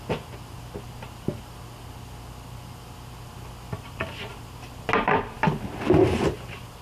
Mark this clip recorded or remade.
recorded